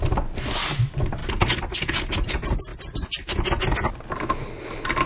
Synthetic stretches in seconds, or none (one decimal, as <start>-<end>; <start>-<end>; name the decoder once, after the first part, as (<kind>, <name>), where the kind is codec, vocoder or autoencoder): 1.2-1.7 (vocoder, BigVGAN v2)